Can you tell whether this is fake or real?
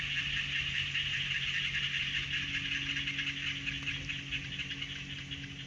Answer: real